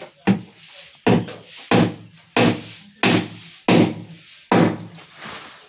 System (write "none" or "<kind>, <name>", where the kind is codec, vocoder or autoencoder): none